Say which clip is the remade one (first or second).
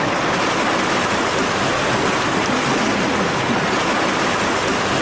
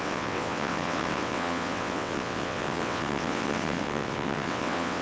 second